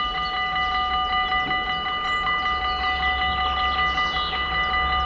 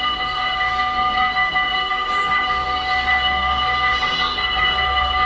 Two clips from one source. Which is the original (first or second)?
first